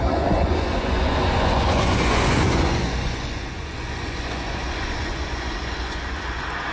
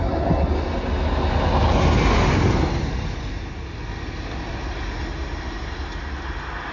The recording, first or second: second